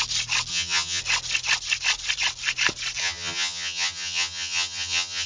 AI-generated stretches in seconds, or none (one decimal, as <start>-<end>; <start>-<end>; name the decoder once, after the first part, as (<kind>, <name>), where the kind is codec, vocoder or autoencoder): 0.5-1.0 (vocoder, HiFi-GAN); 3.0-5.3